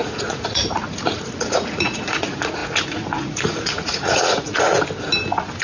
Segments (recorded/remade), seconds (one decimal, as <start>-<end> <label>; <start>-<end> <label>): 0.0-4.7 remade; 4.7-5.6 recorded